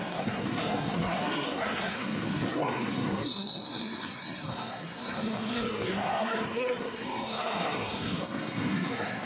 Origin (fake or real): fake